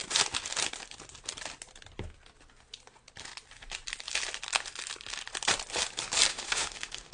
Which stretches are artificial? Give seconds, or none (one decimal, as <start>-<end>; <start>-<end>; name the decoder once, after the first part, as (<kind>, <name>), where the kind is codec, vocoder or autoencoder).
6.3-7.1 (autoencoder, DAC-VAE)